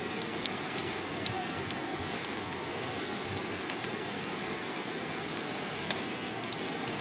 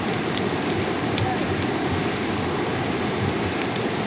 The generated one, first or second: first